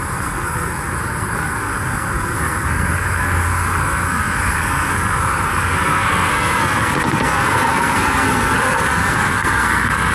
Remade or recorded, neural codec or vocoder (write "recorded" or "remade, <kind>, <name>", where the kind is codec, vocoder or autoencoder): remade, codec, SNAC